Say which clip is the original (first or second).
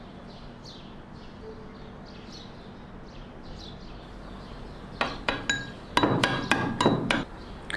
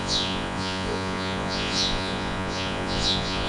first